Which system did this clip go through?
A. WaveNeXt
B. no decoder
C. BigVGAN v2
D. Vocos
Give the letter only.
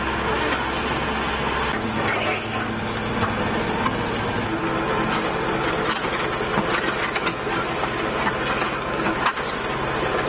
B